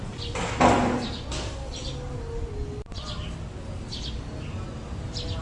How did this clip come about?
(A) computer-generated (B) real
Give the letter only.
B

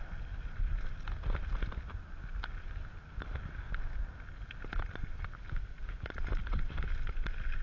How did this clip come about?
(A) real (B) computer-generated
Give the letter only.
A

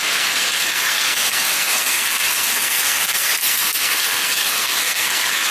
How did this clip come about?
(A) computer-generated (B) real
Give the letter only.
A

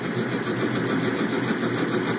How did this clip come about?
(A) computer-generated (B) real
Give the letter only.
B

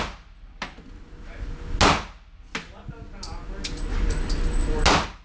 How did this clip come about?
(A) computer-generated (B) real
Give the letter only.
B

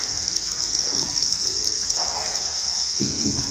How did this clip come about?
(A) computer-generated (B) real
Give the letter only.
A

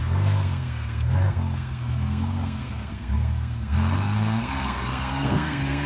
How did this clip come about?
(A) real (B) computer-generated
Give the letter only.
B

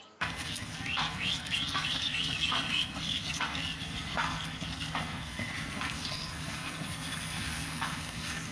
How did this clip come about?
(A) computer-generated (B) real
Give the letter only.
A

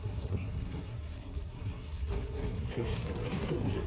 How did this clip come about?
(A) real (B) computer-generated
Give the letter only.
B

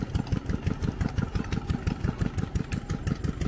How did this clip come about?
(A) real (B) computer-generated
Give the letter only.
A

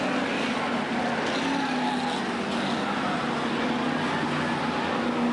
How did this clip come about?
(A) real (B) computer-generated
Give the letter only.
A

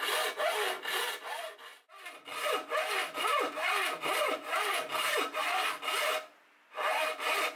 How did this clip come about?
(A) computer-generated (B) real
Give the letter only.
B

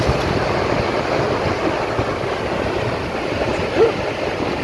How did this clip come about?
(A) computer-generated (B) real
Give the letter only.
B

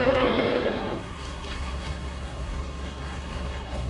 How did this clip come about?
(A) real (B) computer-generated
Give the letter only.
B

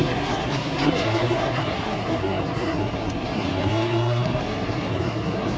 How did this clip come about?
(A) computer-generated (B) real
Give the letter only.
A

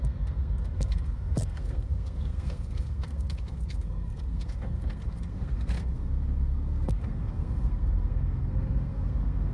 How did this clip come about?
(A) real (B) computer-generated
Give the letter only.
B